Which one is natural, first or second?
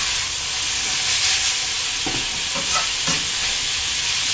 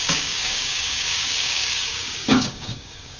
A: first